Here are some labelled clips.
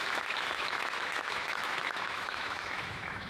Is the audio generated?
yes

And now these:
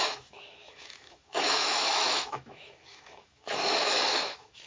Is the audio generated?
yes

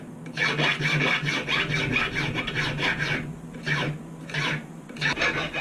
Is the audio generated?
no